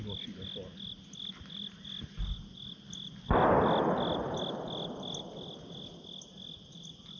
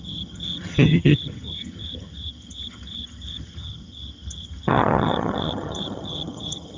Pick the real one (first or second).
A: first